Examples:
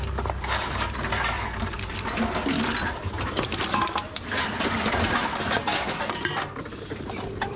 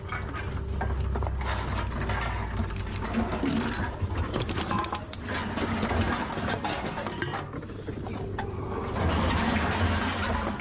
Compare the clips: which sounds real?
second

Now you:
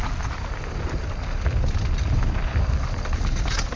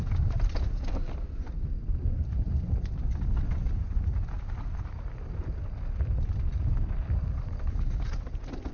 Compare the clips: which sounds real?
first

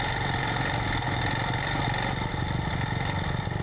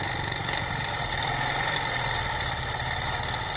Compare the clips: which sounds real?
first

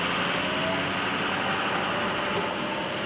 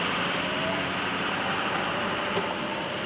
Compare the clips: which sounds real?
first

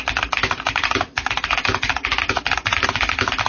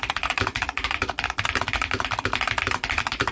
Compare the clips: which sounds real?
first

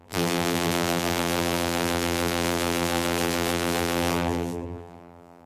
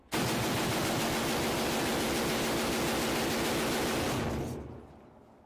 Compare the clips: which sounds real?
second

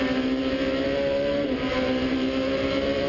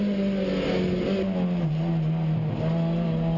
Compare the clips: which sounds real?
second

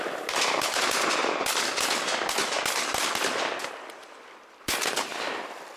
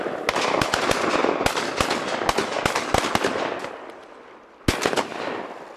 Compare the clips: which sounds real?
second